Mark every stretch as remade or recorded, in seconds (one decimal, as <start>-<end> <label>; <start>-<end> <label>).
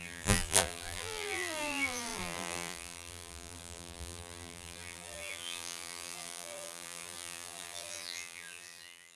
0.0-9.2 remade